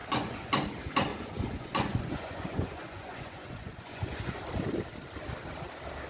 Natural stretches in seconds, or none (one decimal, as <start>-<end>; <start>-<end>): 0.5-1.1; 4.4-6.1